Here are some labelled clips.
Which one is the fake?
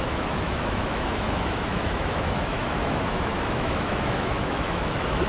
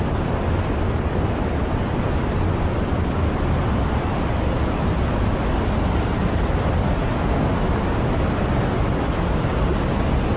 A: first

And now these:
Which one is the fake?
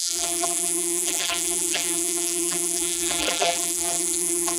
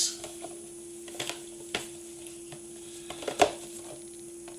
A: first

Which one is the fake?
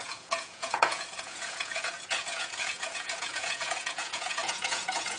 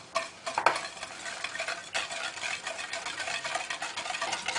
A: first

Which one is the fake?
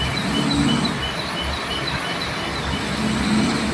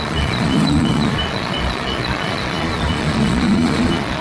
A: second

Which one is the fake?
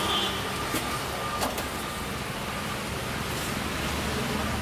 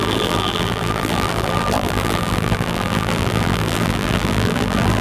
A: second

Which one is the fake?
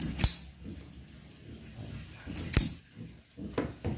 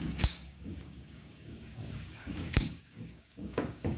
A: second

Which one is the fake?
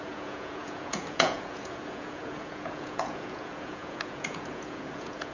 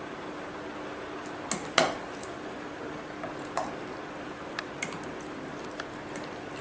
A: first